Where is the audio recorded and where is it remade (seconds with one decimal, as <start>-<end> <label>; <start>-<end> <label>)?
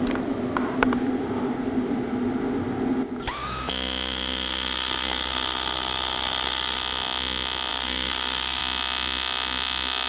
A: 0.0-3.4 recorded; 3.4-6.8 remade; 6.8-7.7 recorded; 7.7-8.6 remade; 8.6-10.1 recorded